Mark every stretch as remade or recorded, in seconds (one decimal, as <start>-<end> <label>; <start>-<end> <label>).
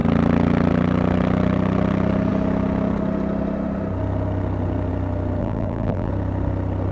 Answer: 0.0-5.4 recorded; 5.4-6.1 remade; 6.1-6.9 recorded